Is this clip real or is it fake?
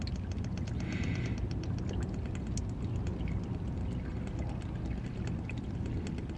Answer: real